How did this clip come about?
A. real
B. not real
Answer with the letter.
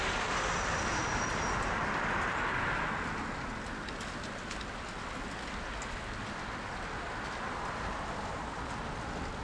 A